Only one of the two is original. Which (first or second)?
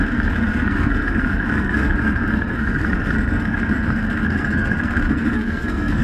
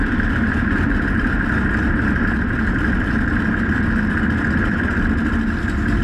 second